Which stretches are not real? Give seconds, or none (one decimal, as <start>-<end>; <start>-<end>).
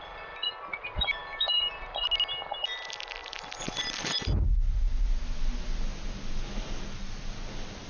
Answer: none